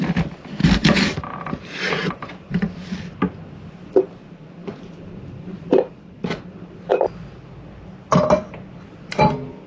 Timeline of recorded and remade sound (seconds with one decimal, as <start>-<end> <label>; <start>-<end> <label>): 0.0-0.6 recorded; 0.6-2.5 remade; 2.5-4.6 recorded; 4.6-7.0 remade; 7.0-9.7 recorded